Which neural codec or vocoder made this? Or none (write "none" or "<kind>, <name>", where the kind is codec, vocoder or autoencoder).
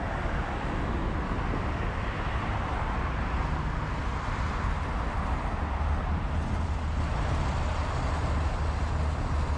none